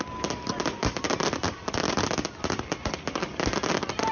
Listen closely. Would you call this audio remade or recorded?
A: recorded